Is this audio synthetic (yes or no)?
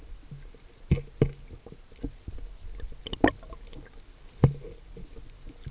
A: no